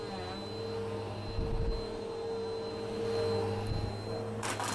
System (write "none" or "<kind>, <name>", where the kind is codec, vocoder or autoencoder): none